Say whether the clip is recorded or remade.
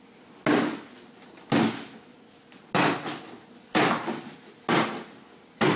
recorded